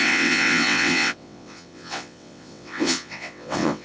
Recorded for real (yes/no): no